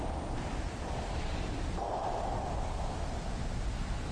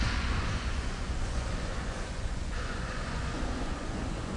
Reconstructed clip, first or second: second